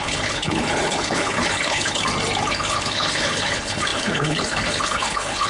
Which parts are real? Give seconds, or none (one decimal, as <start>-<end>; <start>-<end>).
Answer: 2.0-2.5

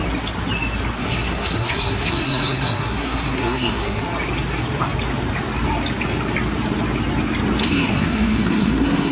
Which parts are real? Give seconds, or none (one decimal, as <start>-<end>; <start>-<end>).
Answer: 0.0-1.0; 4.0-7.6

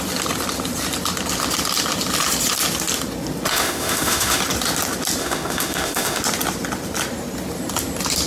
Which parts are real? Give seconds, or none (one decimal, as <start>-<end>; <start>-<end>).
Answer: 0.0-3.5; 4.4-5.2; 6.2-8.3

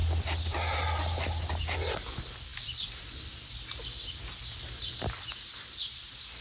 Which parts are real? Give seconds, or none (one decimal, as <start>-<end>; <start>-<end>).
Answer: 0.0-6.4

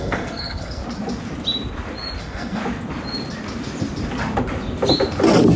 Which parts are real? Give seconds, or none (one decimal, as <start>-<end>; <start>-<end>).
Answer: 0.8-2.2; 2.6-5.6